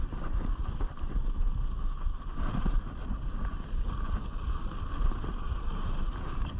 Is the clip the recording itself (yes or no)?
yes